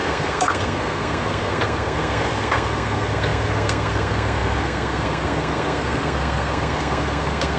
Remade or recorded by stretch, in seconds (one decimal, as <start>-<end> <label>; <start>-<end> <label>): 0.0-7.6 remade